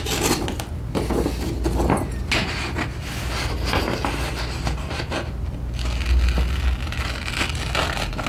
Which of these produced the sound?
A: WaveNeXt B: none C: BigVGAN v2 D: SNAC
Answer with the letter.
B